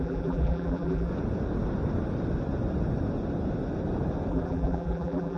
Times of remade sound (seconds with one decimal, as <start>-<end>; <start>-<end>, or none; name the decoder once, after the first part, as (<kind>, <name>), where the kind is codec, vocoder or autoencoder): 0.0-1.1 (vocoder, BigVGAN v2); 4.3-5.4